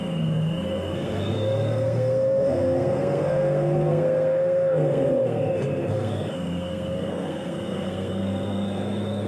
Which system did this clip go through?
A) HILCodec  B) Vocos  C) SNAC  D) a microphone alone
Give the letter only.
C